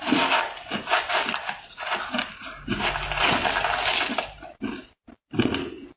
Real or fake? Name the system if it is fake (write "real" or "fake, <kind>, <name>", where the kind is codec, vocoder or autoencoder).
real